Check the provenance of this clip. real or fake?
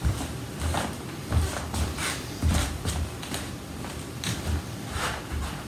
fake